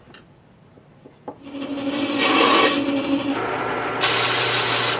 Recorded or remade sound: recorded